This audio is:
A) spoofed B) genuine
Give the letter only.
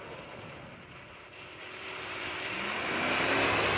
B